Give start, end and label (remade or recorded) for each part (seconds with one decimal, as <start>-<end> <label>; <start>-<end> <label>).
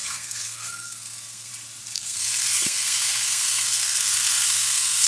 0.0-1.5 remade; 1.5-1.9 recorded; 1.9-5.1 remade